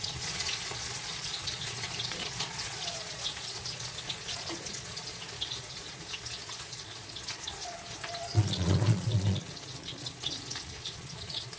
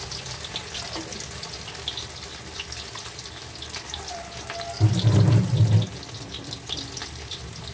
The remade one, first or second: first